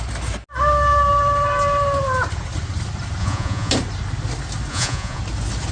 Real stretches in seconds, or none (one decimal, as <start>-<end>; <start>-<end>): 0.0-3.2; 3.7-4.7; 5.2-5.7